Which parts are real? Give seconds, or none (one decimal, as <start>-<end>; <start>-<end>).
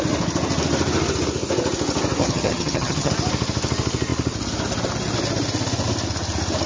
0.0-2.2; 3.1-6.7